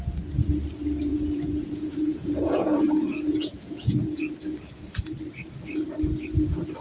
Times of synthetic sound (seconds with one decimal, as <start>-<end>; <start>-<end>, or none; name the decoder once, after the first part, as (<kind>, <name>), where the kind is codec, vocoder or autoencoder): 1.1-4.3 (vocoder, Vocos)